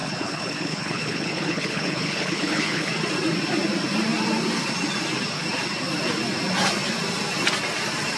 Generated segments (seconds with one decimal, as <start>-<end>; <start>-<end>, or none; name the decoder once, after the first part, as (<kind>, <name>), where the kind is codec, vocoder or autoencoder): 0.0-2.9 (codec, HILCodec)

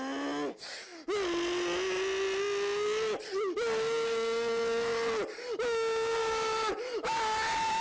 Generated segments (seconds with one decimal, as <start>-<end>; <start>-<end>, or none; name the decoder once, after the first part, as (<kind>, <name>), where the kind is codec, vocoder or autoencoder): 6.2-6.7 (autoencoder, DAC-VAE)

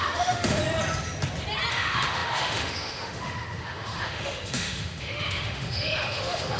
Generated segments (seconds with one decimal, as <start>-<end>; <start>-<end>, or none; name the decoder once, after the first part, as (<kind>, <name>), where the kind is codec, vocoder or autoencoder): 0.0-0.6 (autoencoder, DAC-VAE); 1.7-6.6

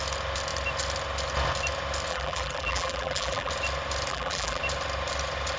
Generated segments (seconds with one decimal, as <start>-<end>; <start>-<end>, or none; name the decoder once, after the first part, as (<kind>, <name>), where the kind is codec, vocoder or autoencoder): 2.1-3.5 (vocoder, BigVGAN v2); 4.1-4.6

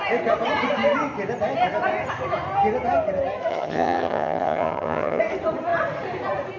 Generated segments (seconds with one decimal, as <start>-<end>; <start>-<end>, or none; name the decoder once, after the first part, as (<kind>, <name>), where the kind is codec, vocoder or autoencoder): 3.5-5.2 (vocoder, HiFi-GAN)